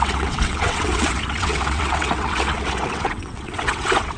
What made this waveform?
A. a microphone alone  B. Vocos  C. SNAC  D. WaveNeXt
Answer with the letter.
D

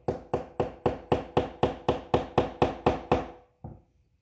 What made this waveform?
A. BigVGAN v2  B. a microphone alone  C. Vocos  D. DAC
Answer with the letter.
B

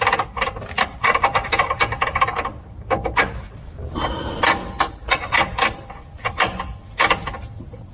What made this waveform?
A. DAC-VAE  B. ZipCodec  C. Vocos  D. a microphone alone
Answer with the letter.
D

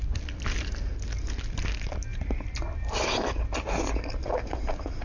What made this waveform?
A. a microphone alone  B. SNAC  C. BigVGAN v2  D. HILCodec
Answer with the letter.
A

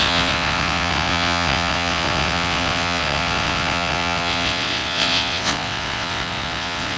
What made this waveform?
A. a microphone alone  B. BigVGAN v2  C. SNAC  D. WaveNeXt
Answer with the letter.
D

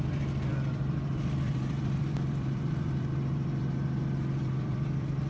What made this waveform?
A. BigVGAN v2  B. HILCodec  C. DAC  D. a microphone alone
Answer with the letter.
A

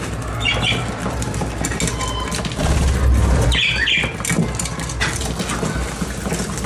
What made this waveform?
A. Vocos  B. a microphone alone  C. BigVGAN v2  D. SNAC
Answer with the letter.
B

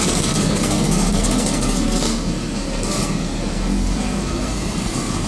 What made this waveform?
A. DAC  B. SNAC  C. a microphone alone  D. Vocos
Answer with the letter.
B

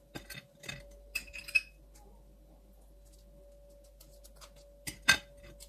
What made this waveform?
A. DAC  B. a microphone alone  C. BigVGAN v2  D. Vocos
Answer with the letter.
B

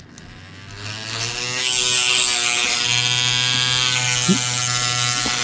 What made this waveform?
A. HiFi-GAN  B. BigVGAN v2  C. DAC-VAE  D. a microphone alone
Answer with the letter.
D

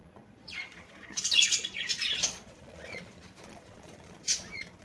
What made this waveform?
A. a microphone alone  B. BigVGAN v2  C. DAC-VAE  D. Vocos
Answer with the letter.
D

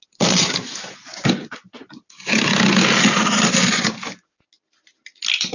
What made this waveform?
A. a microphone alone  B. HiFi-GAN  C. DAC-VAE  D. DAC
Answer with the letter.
A